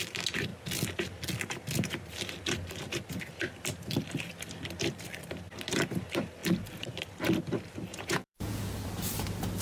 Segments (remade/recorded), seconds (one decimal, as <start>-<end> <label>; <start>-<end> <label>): 0.0-7.9 recorded; 7.9-8.6 remade; 8.6-9.6 recorded